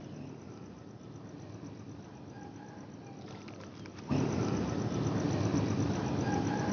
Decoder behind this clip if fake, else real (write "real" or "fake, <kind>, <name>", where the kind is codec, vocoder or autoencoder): real